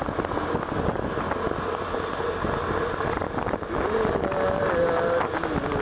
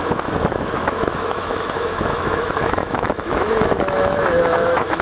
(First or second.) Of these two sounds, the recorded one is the first